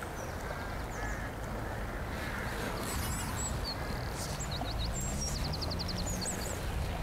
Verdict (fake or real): real